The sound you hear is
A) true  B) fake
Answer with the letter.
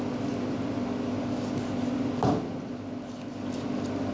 A